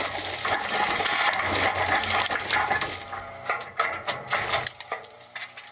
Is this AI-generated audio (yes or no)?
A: no